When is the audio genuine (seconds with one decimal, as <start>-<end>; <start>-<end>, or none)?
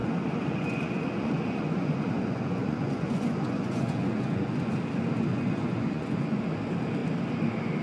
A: 4.7-5.3; 6.4-7.8